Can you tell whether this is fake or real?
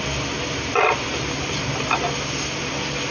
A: real